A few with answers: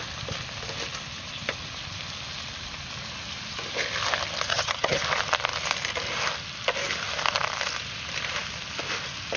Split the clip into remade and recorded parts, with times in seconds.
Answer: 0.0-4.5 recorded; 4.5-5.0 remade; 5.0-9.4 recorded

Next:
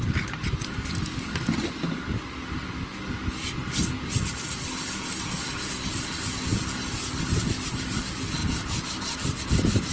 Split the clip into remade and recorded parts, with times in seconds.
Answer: 0.0-9.9 recorded

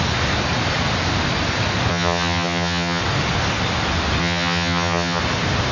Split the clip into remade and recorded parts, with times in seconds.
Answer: 0.0-1.9 recorded; 1.9-3.0 remade; 3.0-4.2 recorded; 4.2-5.2 remade; 5.2-5.7 recorded

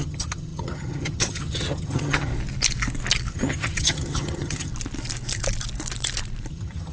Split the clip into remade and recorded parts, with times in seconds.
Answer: 0.0-2.3 remade; 2.3-3.3 recorded; 3.3-4.7 remade; 4.7-6.5 recorded; 6.5-6.9 remade

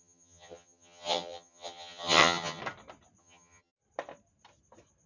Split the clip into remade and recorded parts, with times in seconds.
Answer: 0.0-2.6 remade; 2.6-3.2 recorded; 3.2-3.7 remade; 3.7-5.1 recorded

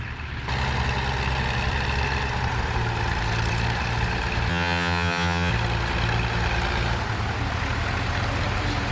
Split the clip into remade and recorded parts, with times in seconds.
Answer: 0.0-4.5 recorded; 4.5-5.5 remade; 5.5-8.9 recorded

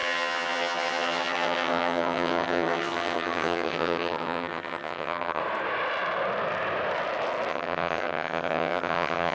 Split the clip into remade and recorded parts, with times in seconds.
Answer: 0.0-5.4 remade; 5.4-7.5 recorded; 7.5-9.3 remade

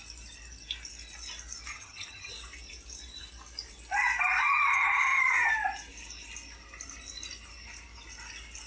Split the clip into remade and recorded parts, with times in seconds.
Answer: 0.0-1.7 recorded; 1.7-2.3 remade; 2.3-4.7 recorded; 4.7-5.5 remade; 5.5-8.7 recorded